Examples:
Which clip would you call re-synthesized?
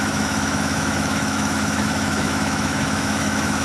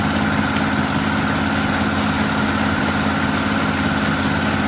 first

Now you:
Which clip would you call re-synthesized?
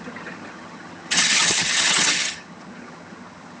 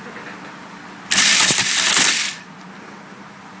first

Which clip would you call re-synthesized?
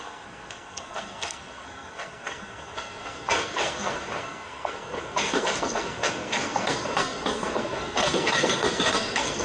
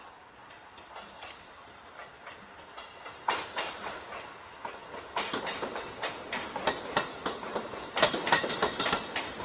first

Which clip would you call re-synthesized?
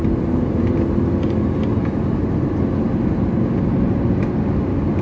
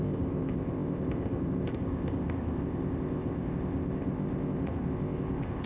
second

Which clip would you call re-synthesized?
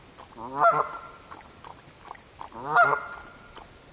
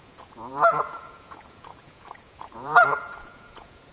second